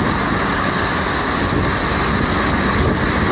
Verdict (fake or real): real